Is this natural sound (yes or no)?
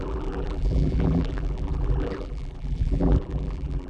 no